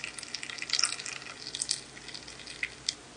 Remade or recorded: recorded